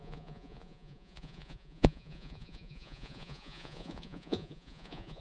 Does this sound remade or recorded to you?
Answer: remade